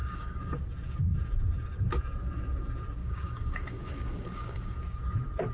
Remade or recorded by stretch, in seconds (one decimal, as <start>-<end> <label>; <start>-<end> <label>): 0.0-0.5 remade; 0.5-3.0 recorded; 3.0-4.8 remade; 4.8-5.5 recorded